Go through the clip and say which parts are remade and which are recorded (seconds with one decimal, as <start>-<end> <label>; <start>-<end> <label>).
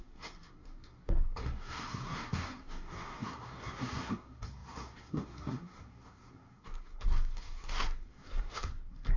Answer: 0.0-9.2 remade